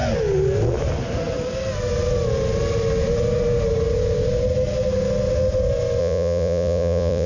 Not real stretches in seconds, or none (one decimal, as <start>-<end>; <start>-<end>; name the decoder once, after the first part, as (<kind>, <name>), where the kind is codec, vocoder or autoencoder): 6.0-7.3 (vocoder, Vocos)